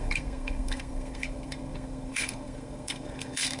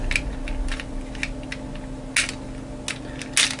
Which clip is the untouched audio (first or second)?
second